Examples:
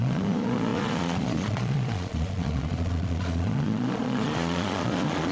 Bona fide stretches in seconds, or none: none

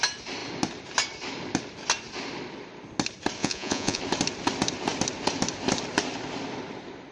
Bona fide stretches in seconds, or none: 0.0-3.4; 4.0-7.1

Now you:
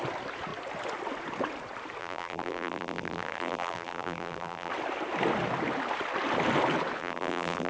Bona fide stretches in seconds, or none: 0.0-2.0; 4.7-7.0

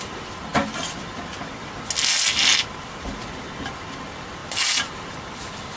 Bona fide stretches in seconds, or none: 0.0-5.8